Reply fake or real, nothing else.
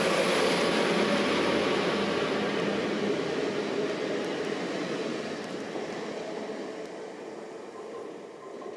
real